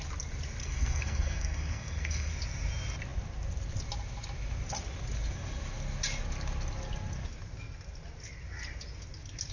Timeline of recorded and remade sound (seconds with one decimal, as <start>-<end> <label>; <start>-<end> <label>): 0.0-0.6 recorded; 0.6-2.3 remade; 2.3-9.5 recorded